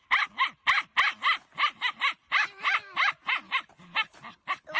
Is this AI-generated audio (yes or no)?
no